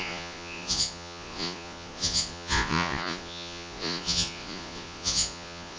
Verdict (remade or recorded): remade